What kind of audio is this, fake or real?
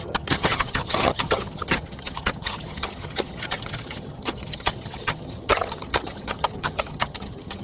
fake